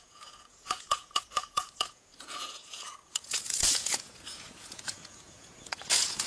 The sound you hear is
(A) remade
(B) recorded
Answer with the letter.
A